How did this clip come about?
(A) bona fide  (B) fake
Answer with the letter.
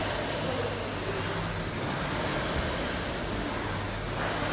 A